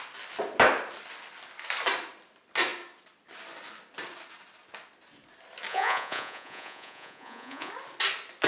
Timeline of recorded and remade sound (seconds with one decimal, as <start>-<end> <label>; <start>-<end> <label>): 0.0-5.7 recorded; 5.7-7.7 remade; 7.7-8.5 recorded